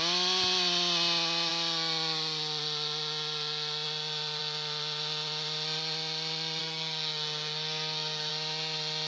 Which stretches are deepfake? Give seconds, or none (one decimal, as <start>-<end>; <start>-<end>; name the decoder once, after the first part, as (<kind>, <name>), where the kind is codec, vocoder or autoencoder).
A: 6.6-8.3 (codec, SNAC)